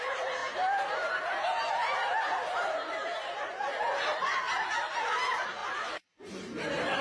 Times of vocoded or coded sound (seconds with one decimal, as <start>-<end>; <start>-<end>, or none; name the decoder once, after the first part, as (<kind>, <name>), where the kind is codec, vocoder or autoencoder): 0.0-0.4 (vocoder, BigVGAN v2); 3.4-7.0

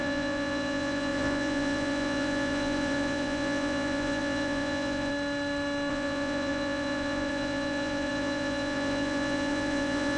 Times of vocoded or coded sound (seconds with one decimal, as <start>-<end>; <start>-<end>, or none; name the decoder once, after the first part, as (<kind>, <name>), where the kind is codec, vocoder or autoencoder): 0.0-5.1 (vocoder, Vocos); 5.9-10.2

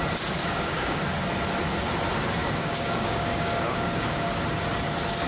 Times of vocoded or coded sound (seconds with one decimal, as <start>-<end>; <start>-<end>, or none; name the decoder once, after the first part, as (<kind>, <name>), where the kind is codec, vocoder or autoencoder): 0.4-1.0 (codec, DAC); 2.4-4.4

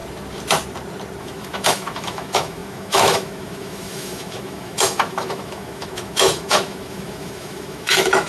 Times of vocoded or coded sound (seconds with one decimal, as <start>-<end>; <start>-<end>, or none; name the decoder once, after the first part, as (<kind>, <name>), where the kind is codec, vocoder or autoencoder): 1.2-8.3 (autoencoder, DAC-VAE)

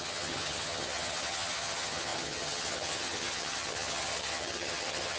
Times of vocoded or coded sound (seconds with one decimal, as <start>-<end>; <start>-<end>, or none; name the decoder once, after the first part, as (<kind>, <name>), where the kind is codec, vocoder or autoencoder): 0.0-5.2 (vocoder, HiFi-GAN)